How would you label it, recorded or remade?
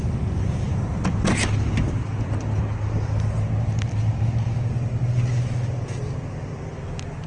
recorded